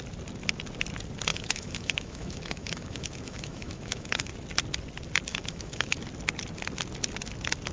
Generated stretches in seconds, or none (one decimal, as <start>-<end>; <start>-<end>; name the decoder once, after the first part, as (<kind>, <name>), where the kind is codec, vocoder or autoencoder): 1.3-4.3 (autoencoder, DAC-VAE); 5.3-5.9